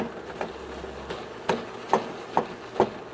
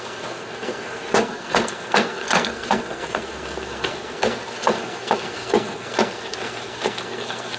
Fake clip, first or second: second